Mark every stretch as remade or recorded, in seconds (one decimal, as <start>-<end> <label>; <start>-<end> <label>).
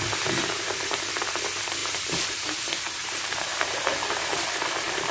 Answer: 0.0-1.8 recorded; 1.8-2.3 remade; 2.3-3.0 recorded; 3.0-3.9 remade; 3.9-5.1 recorded